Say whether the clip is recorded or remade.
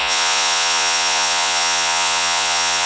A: remade